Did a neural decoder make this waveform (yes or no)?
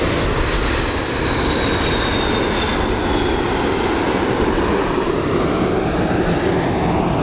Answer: no